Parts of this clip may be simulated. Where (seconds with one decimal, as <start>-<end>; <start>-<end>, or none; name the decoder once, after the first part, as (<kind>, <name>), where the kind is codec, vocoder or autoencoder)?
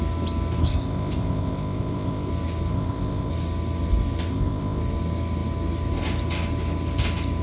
0.6-2.3 (codec, ZipCodec); 2.7-3.3; 4.3-4.8